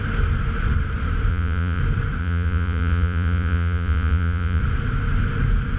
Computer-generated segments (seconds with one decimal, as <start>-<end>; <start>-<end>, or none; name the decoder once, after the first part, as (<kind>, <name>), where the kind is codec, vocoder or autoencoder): 1.3-1.8 (vocoder, Vocos); 2.2-4.6